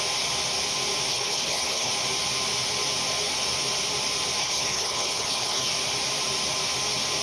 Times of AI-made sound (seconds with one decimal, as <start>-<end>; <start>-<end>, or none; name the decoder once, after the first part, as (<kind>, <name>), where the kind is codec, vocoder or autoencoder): 1.1-1.9 (codec, HILCodec); 4.4-5.7